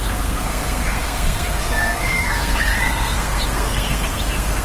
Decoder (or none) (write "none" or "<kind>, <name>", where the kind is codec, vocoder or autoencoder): codec, SNAC